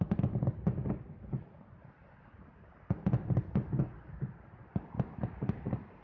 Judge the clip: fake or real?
real